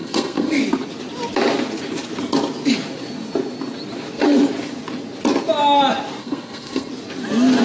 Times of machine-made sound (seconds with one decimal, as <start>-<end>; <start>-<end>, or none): 0.0-0.6; 6.2-6.9